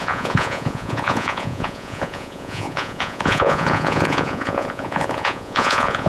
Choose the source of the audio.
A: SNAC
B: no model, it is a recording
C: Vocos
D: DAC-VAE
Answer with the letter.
C